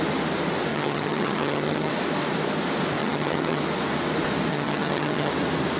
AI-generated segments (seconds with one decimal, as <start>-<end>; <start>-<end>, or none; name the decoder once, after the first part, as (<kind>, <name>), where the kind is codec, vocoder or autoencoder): 0.7-1.9 (vocoder, HiFi-GAN); 3.0-3.6; 4.5-5.3